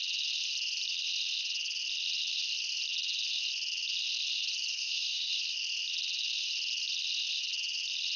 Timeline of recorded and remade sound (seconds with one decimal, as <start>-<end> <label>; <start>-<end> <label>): 0.0-4.7 recorded; 4.7-5.3 remade; 5.3-8.2 recorded